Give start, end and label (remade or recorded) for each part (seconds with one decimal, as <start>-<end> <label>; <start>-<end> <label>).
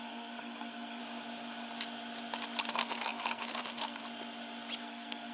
0.0-1.0 remade; 1.0-2.7 recorded; 2.7-4.0 remade; 4.0-4.8 recorded; 4.8-5.3 remade